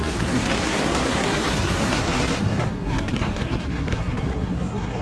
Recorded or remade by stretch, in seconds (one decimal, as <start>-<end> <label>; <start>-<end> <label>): 0.0-5.0 remade